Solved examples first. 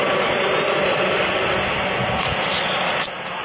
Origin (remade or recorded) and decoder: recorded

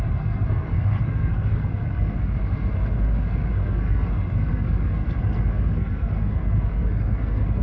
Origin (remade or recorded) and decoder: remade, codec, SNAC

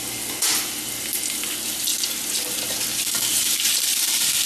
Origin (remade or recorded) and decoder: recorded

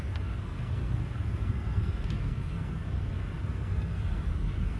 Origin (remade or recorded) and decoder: remade, codec, SNAC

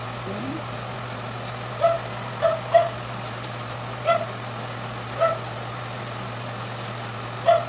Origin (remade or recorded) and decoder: recorded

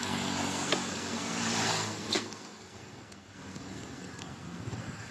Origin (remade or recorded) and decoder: remade, codec, SNAC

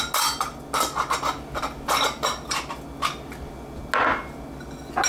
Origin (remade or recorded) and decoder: recorded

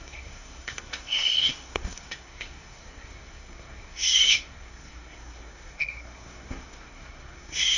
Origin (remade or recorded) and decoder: remade, codec, SNAC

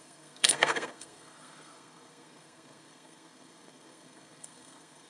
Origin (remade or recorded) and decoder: remade, codec, SNAC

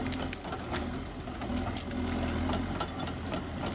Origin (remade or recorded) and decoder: recorded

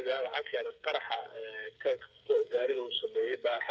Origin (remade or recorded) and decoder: remade, codec, SNAC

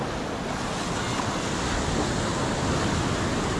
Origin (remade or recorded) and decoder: recorded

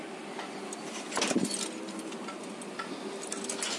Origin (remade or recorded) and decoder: recorded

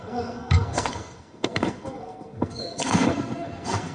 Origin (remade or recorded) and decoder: remade, codec, SNAC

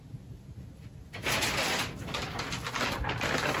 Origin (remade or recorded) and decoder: recorded